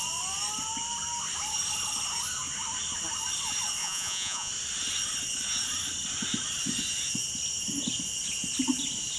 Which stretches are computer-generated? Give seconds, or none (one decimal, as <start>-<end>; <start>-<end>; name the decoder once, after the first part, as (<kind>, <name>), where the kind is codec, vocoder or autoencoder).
3.8-4.5 (vocoder, Vocos)